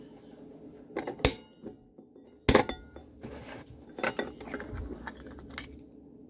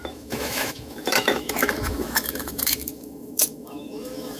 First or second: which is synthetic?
second